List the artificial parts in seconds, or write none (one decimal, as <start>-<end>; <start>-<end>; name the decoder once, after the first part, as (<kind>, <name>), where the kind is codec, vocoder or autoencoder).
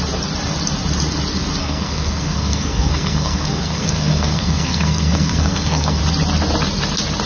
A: 1.6-6.0 (codec, SNAC)